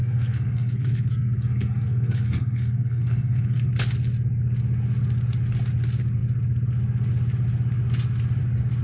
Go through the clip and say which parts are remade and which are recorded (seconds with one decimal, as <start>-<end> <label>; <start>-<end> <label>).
0.0-3.7 remade; 3.7-8.8 recorded